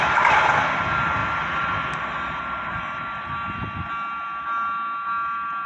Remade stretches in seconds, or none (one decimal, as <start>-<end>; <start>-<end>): none